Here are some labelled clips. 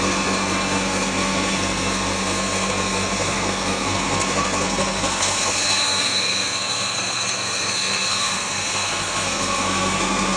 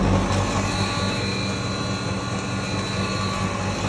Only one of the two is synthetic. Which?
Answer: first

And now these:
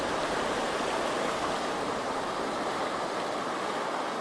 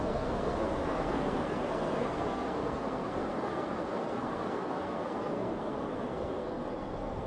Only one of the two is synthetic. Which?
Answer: second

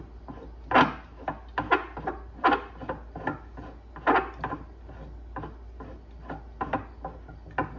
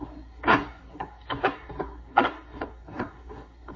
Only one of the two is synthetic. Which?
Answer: second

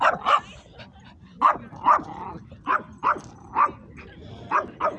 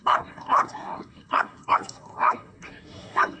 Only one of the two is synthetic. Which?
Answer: second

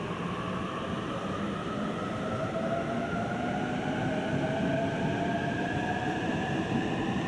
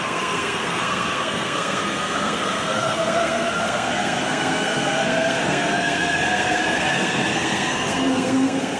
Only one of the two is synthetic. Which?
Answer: second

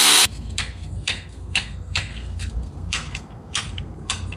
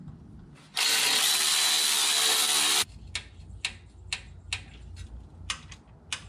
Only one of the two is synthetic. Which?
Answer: first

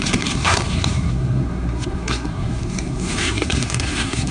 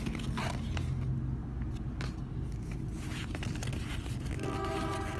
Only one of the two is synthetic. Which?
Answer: first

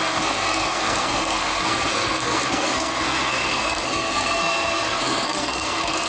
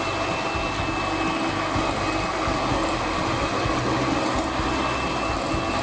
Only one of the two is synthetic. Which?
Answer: first